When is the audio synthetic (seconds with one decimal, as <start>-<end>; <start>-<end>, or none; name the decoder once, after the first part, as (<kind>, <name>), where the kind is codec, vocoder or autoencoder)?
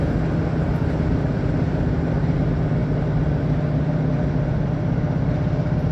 none